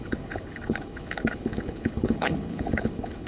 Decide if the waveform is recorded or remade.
remade